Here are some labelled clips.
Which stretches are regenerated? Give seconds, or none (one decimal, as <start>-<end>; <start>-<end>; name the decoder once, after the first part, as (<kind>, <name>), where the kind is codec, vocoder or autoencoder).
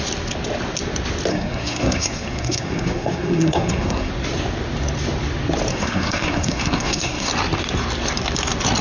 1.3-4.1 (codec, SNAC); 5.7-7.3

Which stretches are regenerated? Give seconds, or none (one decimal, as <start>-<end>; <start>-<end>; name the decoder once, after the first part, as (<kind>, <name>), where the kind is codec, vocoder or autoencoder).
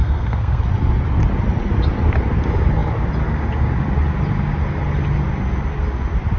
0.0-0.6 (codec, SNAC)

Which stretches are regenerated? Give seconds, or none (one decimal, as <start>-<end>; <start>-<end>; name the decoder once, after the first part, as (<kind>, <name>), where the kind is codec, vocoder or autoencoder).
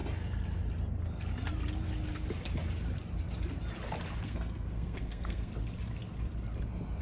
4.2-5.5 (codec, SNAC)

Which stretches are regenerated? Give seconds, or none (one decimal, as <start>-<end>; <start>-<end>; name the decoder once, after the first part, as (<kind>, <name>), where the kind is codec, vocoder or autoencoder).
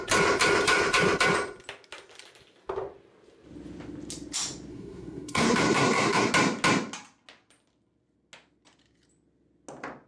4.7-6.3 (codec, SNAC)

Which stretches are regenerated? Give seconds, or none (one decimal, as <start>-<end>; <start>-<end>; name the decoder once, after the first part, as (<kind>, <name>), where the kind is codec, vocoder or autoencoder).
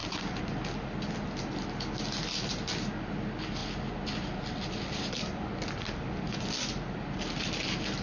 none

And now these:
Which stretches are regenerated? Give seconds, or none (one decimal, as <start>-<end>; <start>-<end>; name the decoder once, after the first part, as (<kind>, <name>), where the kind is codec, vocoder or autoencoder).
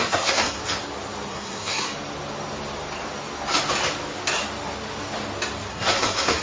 0.0-0.6 (codec, SNAC); 1.3-1.9; 5.7-6.4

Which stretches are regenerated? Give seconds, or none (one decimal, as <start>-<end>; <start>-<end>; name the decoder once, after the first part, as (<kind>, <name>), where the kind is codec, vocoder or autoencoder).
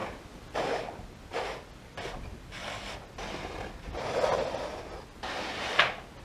none